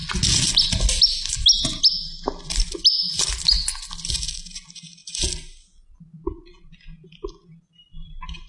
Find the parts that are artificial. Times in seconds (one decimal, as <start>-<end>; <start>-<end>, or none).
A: none